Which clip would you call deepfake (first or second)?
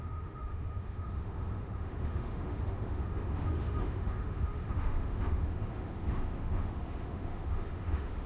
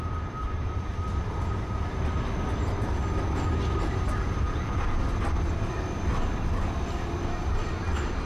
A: first